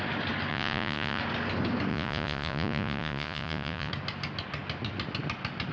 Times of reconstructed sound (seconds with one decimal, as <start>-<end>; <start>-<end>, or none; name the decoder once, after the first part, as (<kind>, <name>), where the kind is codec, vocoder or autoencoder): 0.5-1.2 (vocoder, Vocos); 1.9-3.9